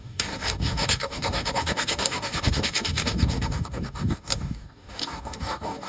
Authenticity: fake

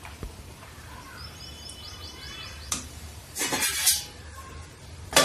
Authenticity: fake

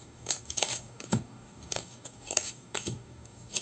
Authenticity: fake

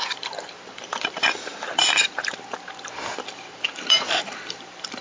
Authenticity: fake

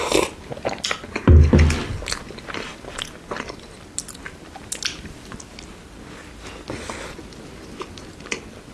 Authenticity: real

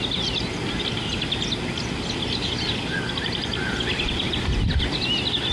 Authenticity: real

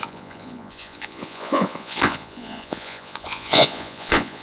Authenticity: fake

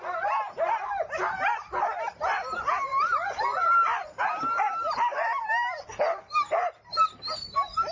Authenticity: real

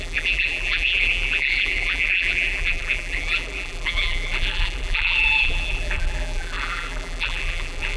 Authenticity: fake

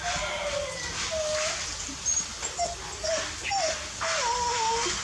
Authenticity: real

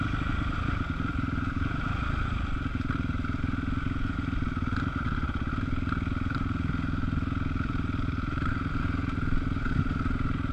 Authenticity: fake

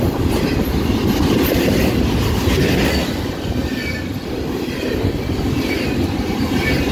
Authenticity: real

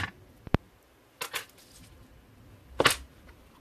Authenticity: real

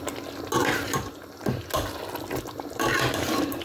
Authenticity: real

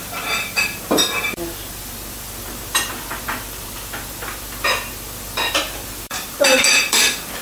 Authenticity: fake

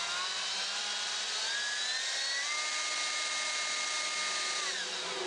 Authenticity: real